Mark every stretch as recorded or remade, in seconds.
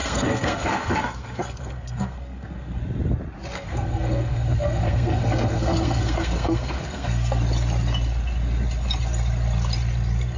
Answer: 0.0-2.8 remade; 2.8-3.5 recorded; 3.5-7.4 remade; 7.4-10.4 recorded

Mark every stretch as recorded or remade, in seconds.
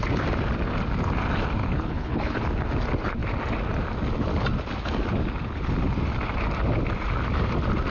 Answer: 0.0-1.6 recorded; 1.6-2.4 remade; 2.4-7.9 recorded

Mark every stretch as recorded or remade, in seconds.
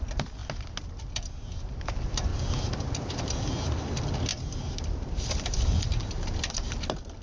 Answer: 0.0-2.3 recorded; 2.3-3.1 remade; 3.1-4.3 recorded; 4.3-5.7 remade; 5.7-7.2 recorded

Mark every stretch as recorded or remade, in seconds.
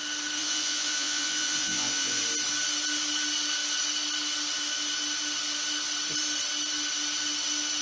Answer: 0.0-0.4 recorded; 0.4-2.2 remade; 2.2-7.8 recorded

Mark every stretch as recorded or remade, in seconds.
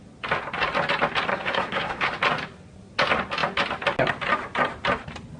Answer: 0.0-1.3 recorded; 1.3-2.1 remade; 2.1-5.4 recorded